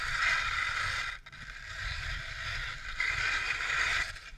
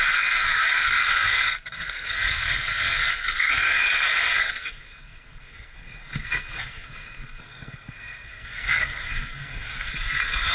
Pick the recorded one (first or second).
first